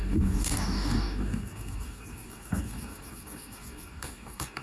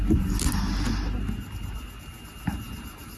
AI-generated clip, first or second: first